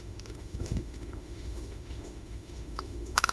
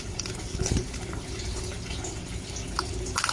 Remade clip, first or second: first